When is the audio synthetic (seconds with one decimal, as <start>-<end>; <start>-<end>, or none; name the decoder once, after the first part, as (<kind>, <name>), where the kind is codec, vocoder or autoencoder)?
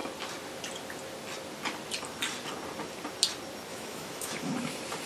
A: 3.7-4.5 (autoencoder, DAC-VAE)